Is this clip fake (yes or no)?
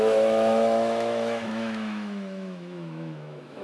yes